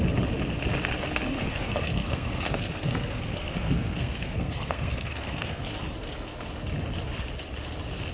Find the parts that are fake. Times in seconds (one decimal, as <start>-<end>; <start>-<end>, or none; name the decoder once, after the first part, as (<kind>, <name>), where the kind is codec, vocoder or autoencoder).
1.4-5.6 (codec, SNAC)